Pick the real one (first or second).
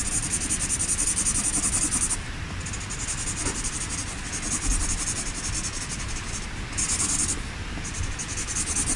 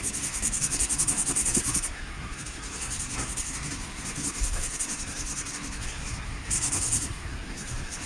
first